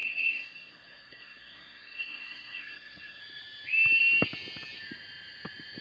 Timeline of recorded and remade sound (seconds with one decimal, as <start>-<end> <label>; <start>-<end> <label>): 0.0-3.2 remade; 3.2-5.8 recorded